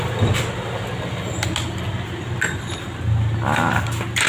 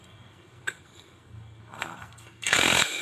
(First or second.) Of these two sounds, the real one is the first